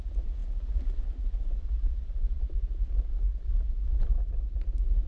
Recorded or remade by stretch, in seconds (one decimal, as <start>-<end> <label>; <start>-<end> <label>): 0.0-5.1 recorded